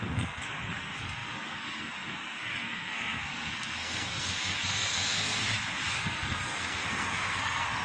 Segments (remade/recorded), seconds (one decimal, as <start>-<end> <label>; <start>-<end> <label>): 0.0-5.4 remade; 5.4-5.9 recorded; 5.9-7.8 remade